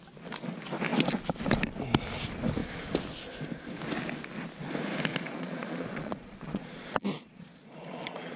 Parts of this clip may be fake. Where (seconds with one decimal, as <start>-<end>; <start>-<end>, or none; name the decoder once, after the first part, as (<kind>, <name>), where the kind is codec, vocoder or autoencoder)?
5.1-8.4 (vocoder, Vocos)

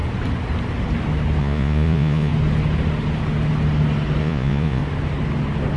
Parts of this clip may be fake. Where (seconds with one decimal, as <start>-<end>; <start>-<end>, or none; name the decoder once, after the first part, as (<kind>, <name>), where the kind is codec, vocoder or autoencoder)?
1.4-2.3 (vocoder, Vocos); 4.2-4.8

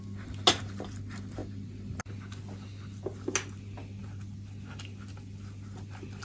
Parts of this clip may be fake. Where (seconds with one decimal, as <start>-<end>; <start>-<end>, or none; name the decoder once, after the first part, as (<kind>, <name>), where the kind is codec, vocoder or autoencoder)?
none

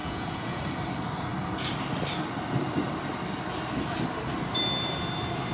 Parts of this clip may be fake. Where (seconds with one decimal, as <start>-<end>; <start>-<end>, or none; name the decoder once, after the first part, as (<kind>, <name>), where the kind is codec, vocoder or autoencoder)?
0.0-0.6 (vocoder, Vocos)

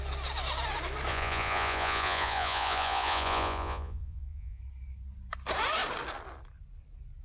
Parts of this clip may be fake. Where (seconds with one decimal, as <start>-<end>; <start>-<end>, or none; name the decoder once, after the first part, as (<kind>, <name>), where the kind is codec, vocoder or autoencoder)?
1.1-4.6 (vocoder, Vocos)